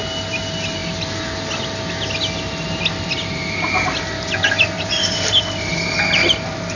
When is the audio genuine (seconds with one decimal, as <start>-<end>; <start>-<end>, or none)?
0.0-6.8